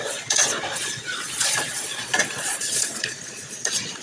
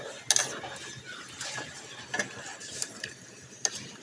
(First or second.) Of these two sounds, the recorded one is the second